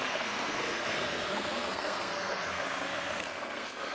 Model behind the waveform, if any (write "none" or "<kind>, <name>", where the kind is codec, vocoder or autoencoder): codec, SNAC